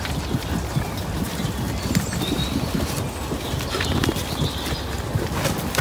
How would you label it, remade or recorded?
recorded